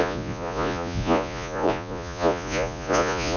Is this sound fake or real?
fake